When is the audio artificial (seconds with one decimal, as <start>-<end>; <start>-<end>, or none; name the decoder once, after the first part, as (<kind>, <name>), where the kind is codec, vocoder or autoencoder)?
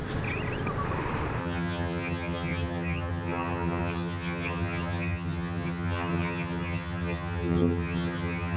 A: 1.4-8.6 (vocoder, HiFi-GAN)